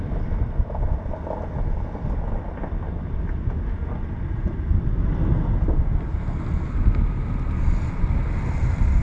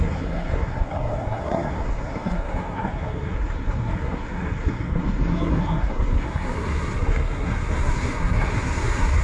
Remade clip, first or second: second